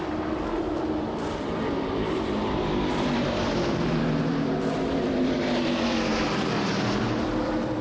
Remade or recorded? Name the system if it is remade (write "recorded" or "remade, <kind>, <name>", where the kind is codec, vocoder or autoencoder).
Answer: remade, vocoder, BigVGAN v2